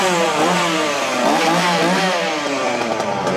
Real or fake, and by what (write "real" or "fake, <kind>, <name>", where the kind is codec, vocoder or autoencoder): fake, vocoder, BigVGAN v2